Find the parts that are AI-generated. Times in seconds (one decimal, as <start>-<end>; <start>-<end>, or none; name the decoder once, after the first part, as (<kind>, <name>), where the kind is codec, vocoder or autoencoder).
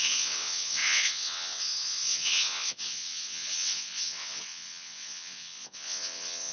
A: 0.0-6.5 (vocoder, WaveNeXt)